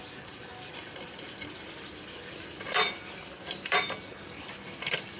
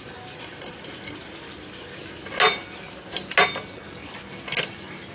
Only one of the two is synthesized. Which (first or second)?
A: first